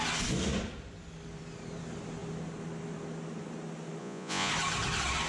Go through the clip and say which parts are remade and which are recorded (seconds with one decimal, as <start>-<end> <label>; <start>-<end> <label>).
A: 0.0-4.0 recorded; 4.0-4.5 remade; 4.5-5.3 recorded